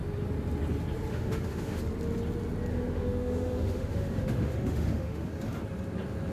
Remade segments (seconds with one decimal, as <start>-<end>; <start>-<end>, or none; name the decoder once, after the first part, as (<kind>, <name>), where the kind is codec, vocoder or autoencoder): 1.1-1.8 (autoencoder, DAC-VAE); 2.7-5.3